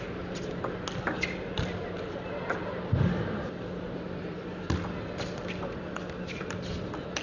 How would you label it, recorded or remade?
recorded